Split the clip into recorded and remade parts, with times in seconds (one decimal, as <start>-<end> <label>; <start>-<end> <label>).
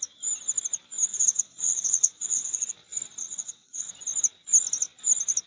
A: 0.0-1.1 recorded; 1.1-2.7 remade; 2.7-3.2 recorded; 3.2-3.9 remade; 3.9-5.5 recorded